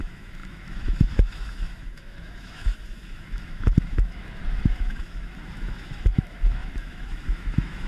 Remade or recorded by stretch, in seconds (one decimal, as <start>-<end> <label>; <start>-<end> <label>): 0.0-7.9 remade